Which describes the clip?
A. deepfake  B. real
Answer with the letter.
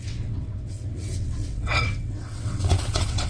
A